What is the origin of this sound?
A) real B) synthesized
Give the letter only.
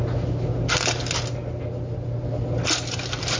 A